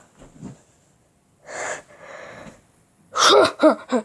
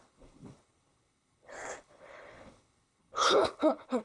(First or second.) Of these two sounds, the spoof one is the second